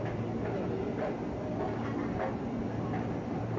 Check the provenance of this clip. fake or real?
real